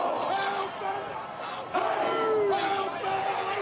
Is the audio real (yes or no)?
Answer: yes